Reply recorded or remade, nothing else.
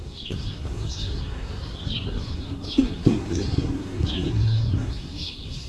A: remade